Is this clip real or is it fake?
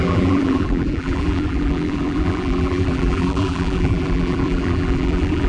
fake